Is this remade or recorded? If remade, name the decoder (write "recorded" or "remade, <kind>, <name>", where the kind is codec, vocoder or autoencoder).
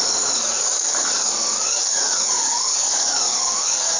remade, codec, DAC